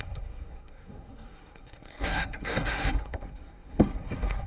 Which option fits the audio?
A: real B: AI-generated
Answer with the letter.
B